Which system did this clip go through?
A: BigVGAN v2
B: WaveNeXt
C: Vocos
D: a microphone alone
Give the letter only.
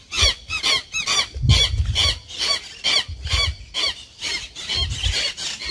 D